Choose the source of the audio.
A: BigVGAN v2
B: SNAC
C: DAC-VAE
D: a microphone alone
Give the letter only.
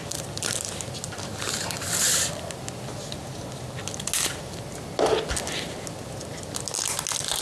D